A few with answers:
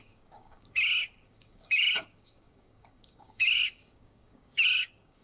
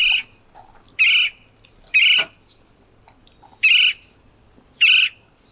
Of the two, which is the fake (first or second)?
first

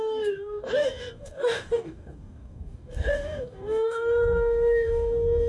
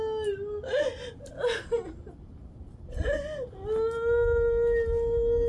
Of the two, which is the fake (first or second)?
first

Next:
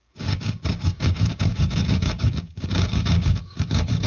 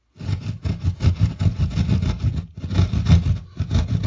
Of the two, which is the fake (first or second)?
first